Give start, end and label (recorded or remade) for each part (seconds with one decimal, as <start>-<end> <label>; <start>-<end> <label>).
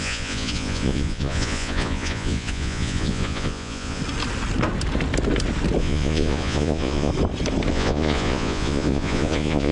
0.0-4.0 remade; 4.0-5.8 recorded; 5.8-7.1 remade; 7.1-7.7 recorded; 7.7-9.7 remade